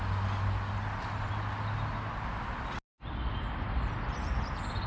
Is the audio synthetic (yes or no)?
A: no